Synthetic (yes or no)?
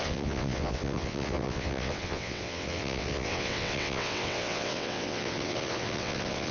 yes